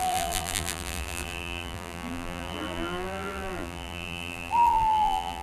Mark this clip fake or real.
fake